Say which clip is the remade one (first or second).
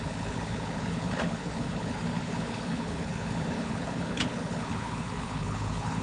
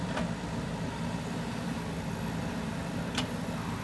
first